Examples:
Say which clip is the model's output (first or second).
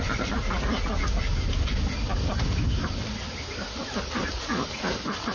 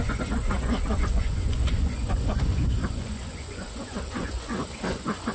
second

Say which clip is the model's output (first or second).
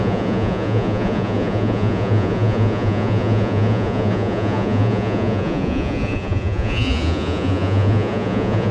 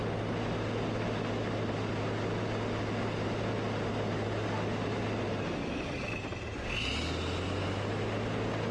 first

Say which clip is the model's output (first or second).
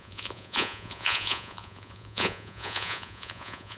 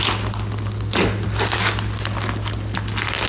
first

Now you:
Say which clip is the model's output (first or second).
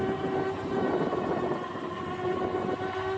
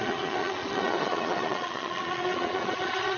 second